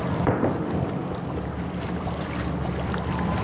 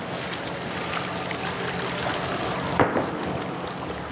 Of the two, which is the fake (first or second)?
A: first